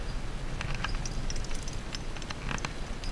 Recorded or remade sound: recorded